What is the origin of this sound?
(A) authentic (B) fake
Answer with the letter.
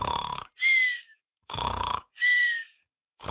B